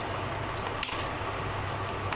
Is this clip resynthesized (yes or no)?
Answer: no